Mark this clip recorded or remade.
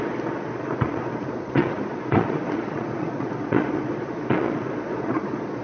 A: remade